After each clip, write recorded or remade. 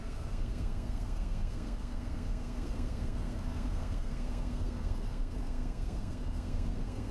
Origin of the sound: remade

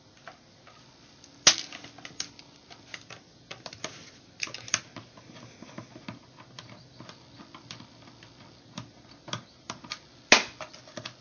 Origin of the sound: recorded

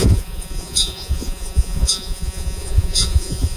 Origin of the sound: remade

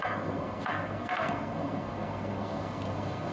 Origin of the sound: remade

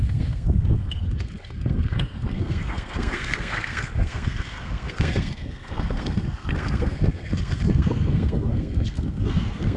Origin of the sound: remade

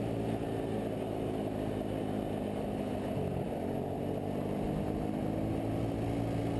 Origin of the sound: recorded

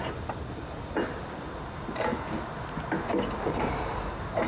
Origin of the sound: recorded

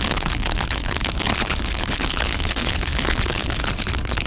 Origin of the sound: remade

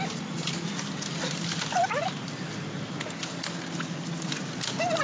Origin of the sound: recorded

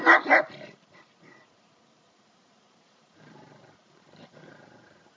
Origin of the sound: remade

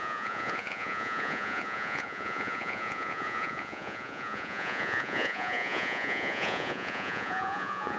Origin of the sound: remade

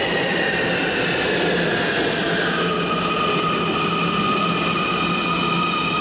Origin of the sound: recorded